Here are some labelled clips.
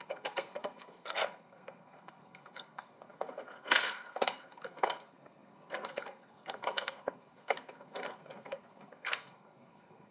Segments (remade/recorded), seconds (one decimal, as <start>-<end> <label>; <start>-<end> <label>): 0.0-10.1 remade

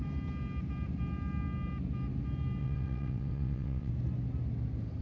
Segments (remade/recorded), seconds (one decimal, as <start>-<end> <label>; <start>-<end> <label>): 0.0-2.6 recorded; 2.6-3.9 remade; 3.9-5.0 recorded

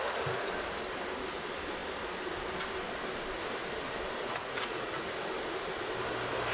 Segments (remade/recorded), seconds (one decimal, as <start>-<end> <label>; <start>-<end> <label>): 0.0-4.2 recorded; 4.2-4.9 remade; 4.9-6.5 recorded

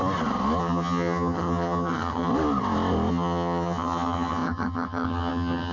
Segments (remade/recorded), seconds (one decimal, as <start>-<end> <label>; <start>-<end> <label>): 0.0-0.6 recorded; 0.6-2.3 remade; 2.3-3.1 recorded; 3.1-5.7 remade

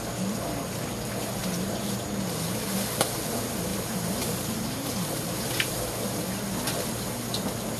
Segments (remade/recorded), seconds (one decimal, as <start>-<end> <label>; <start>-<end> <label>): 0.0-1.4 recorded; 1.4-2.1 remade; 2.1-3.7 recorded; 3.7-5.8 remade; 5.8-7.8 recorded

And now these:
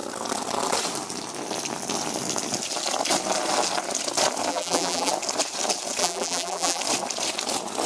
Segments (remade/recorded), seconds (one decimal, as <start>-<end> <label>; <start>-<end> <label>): 0.0-4.5 recorded; 4.5-5.1 remade; 5.1-6.0 recorded; 6.0-6.8 remade; 6.8-7.9 recorded